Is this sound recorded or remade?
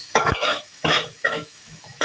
remade